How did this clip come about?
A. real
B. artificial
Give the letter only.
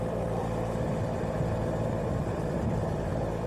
B